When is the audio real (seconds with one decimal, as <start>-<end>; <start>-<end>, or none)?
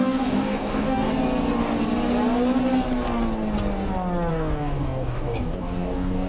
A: 1.1-4.3